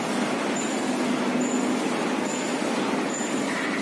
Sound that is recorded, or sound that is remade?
recorded